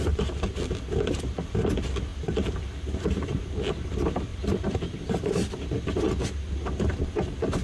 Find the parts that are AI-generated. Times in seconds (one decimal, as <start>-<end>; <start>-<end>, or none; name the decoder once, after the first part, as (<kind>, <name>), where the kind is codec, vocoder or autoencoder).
4.3-5.7 (vocoder, BigVGAN v2)